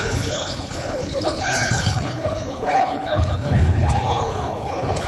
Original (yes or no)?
no